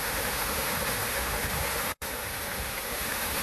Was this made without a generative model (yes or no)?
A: no